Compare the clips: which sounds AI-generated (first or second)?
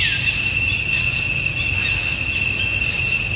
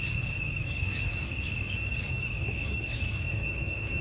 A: second